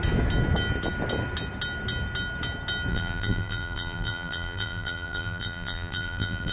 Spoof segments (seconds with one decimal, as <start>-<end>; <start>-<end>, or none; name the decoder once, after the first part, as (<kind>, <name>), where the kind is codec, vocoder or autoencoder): 2.9-6.5 (vocoder, BigVGAN v2)